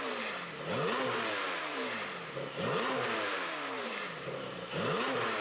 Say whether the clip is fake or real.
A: fake